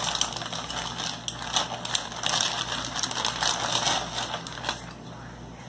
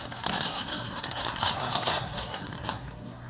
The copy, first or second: second